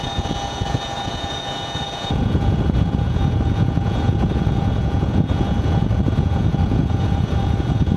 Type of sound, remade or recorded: remade